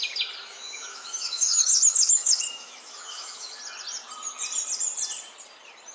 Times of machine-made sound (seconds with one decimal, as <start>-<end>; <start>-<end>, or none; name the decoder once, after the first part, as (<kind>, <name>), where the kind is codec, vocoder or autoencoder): 0.5-3.6 (autoencoder, DAC-VAE)